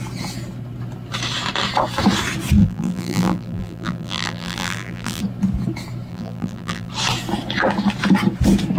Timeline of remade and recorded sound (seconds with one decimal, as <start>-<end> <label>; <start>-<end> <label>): 0.0-2.6 recorded; 2.6-5.2 remade; 5.2-6.1 recorded; 6.1-6.9 remade; 6.9-8.8 recorded